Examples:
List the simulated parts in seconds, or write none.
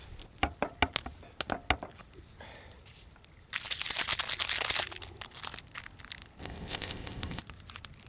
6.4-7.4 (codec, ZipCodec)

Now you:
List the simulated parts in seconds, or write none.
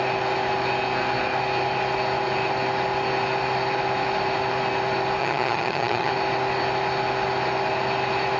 5.2-6.1 (vocoder, HiFi-GAN)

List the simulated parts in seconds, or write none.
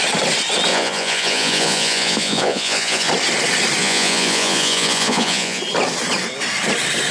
0.7-3.1 (vocoder, Vocos); 3.8-5.6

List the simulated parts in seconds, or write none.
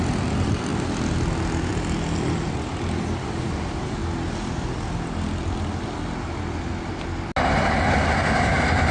none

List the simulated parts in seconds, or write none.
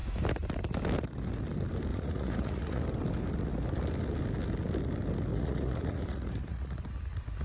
1.9-2.8 (vocoder, Vocos); 5.3-6.8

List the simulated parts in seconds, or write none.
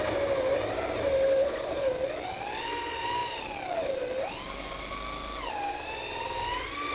1.4-1.9 (codec, HILCodec)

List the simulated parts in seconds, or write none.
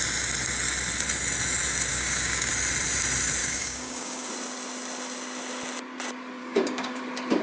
1.9-2.5 (codec, DAC); 3.4-4.3; 6.4-7.0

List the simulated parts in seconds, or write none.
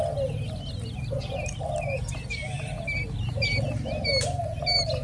none